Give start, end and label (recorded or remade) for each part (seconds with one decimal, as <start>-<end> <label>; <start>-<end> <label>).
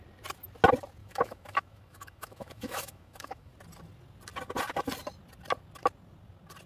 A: 0.0-1.0 recorded; 1.0-3.5 remade; 3.5-6.7 recorded